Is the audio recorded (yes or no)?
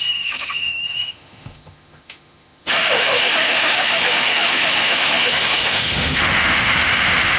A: no